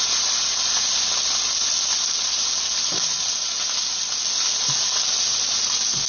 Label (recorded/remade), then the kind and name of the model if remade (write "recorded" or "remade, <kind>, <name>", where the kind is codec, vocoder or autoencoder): recorded